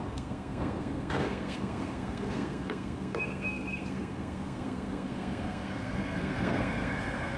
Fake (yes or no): yes